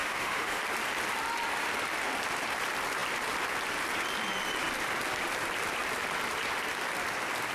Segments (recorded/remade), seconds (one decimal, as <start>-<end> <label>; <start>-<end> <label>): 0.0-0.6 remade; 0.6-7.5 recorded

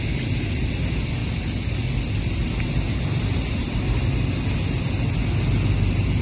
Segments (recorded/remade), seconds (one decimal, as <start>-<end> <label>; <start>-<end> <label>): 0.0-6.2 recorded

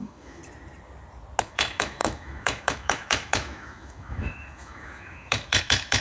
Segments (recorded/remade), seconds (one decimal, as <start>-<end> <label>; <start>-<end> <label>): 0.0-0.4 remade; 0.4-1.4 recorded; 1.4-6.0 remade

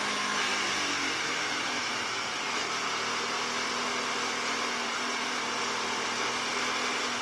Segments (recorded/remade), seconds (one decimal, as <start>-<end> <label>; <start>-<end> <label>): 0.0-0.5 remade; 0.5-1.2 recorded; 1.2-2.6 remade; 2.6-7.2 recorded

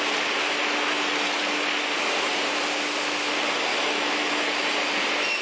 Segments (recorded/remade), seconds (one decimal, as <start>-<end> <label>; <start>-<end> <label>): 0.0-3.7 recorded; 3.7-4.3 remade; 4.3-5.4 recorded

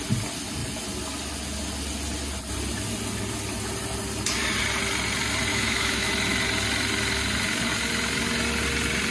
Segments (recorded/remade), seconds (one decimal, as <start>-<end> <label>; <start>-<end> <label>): 0.0-5.5 recorded; 5.5-6.1 remade; 6.1-9.1 recorded

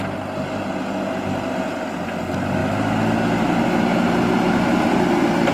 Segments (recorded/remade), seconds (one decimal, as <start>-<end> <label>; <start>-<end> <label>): 0.0-5.5 recorded